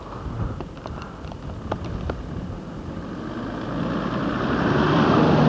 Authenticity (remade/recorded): recorded